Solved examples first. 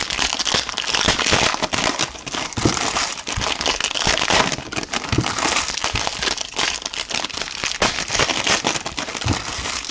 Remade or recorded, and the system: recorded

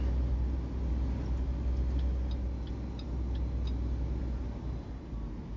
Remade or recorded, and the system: recorded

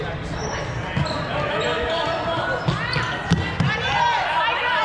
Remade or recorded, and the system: recorded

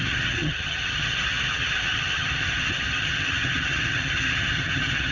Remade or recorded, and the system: remade, vocoder, HiFi-GAN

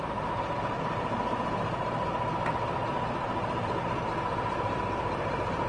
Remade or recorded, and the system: recorded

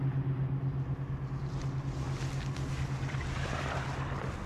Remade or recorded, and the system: recorded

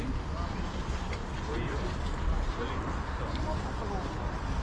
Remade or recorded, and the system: recorded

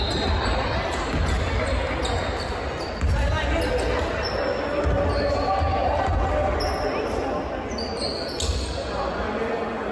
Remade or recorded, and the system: recorded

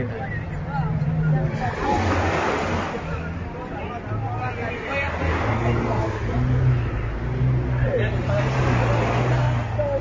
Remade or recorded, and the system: recorded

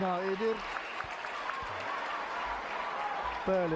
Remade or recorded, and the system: recorded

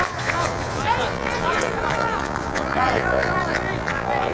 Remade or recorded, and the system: remade, vocoder, Vocos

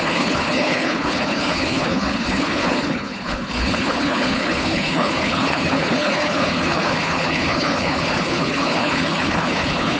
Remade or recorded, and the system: remade, codec, HILCodec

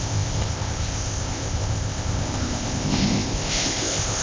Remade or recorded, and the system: remade, codec, ZipCodec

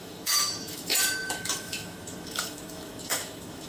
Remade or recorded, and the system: remade, autoencoder, DAC-VAE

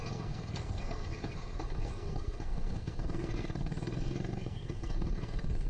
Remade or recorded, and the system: remade, codec, SNAC